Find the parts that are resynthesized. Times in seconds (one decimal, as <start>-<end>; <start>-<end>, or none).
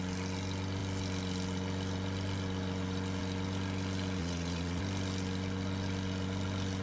4.2-4.8